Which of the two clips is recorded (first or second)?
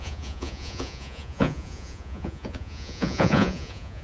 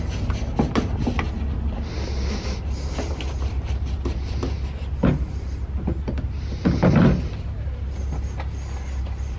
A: second